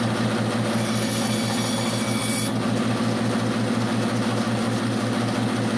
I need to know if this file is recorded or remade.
recorded